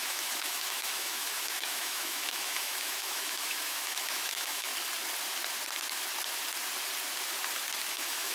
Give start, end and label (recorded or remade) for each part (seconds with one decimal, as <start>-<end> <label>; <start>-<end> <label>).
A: 0.0-4.7 remade; 4.7-7.9 recorded; 7.9-8.3 remade